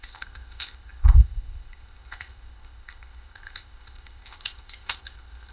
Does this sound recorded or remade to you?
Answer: remade